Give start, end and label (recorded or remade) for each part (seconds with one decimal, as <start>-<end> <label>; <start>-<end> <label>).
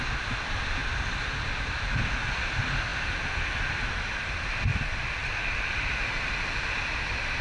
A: 0.0-0.8 recorded; 0.8-2.1 remade; 2.1-4.7 recorded; 4.7-5.9 remade; 5.9-7.4 recorded